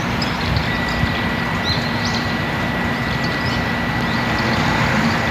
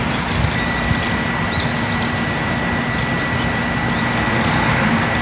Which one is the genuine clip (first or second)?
second